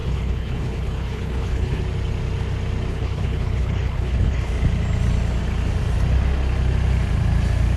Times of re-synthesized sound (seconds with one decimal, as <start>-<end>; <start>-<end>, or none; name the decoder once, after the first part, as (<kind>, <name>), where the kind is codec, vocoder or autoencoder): 0.0-1.8 (codec, HILCodec); 2.9-4.5